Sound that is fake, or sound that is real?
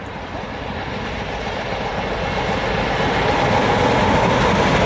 real